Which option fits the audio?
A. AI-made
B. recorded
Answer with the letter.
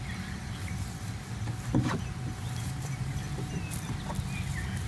B